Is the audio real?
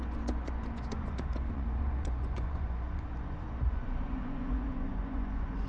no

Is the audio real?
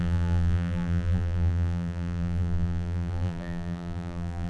no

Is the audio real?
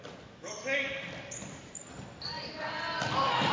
yes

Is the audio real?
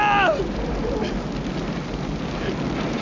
yes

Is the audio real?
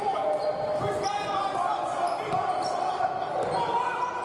yes